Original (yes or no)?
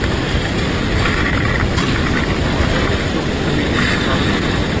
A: yes